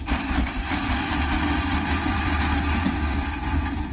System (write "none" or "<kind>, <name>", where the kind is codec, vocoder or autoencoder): none